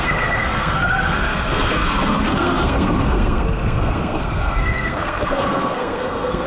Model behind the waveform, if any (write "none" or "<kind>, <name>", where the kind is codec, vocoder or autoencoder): codec, SNAC